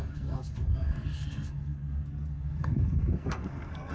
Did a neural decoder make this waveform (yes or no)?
yes